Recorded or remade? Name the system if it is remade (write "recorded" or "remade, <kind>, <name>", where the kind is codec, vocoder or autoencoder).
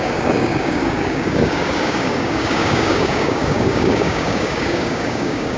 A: remade, codec, DAC